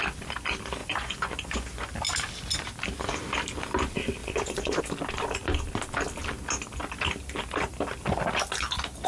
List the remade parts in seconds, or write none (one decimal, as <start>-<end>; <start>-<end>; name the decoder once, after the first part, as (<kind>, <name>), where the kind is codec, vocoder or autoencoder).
0.8-1.9 (vocoder, Vocos); 4.2-4.8